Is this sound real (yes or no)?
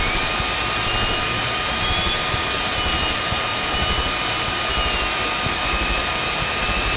yes